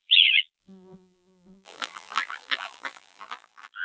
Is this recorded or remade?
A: remade